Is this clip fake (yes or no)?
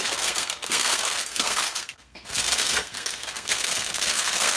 yes